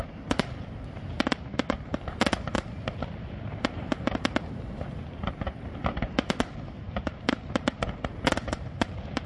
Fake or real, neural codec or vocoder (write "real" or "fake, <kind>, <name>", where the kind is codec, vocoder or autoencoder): fake, vocoder, BigVGAN v2